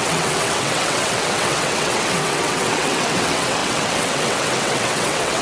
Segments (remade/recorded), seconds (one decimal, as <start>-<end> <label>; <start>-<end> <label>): 0.0-5.4 remade